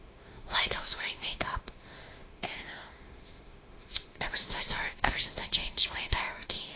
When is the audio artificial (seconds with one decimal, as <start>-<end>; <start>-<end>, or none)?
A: 0.0-6.8